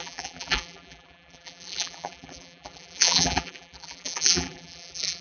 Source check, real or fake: fake